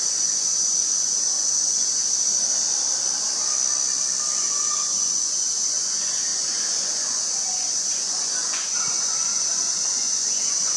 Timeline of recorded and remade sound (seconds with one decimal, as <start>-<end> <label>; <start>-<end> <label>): 0.0-2.0 remade; 2.0-4.4 recorded; 4.4-10.8 remade